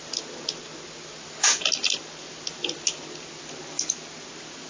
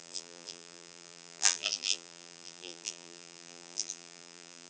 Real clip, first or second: first